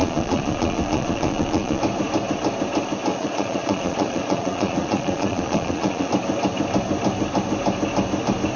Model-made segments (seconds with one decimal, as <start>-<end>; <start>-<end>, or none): 0.0-1.8; 3.1-6.1